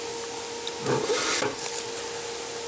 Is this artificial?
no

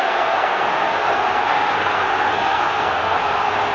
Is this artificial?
yes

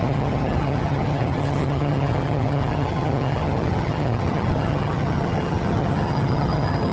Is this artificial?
yes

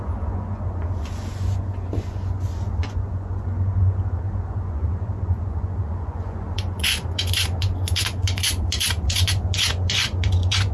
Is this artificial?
yes